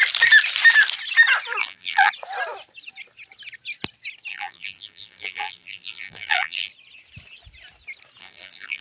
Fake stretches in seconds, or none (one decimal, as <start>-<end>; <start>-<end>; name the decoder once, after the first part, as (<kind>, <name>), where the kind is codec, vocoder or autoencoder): 1.6-2.1 (vocoder, BigVGAN v2); 4.3-6.7; 8.2-8.8

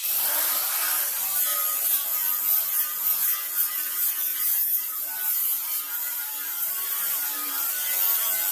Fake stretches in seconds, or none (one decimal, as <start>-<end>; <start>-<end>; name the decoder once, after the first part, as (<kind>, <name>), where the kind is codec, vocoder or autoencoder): 4.3-7.7 (vocoder, BigVGAN v2)

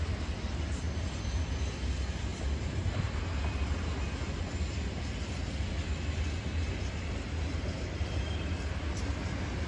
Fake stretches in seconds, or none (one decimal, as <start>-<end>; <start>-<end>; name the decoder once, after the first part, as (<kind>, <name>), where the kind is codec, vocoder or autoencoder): none

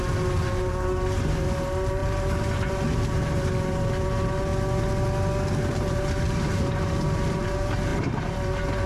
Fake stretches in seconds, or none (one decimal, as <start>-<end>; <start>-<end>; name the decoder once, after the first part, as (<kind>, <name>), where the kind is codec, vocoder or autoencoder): 0.0-4.5 (vocoder, BigVGAN v2); 5.7-8.9

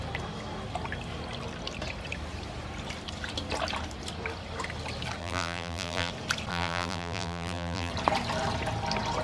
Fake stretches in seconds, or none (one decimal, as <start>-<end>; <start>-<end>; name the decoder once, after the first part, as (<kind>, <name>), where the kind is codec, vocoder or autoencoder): 5.2-6.1 (vocoder, BigVGAN v2); 6.5-7.9

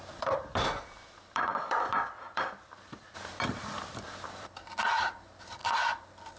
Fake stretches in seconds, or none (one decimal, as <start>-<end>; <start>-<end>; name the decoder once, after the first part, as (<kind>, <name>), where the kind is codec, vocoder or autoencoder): 0.0-6.4 (vocoder, BigVGAN v2)

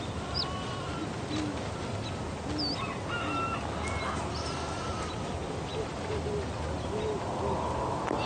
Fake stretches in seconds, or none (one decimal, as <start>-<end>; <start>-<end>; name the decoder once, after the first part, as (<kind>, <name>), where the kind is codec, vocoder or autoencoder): 5.7-6.6 (vocoder, BigVGAN v2)

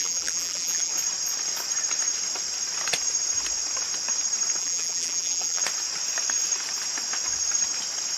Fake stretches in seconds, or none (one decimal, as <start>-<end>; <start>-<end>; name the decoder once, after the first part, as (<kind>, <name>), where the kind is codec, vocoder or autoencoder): 0.0-0.9 (vocoder, BigVGAN v2); 4.6-5.6